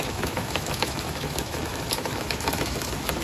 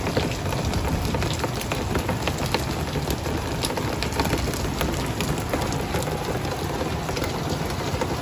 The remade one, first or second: first